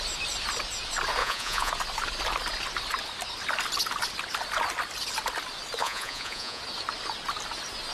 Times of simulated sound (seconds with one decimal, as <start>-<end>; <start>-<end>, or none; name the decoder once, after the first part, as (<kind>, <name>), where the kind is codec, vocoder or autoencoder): 1.2-1.7 (vocoder, Vocos); 5.8-6.6